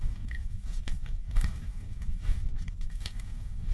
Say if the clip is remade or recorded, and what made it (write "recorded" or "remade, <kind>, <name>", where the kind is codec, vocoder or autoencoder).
remade, codec, DAC